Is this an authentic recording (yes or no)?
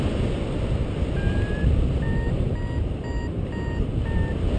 yes